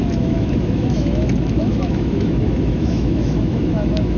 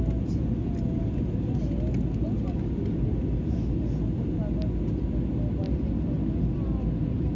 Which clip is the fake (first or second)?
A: first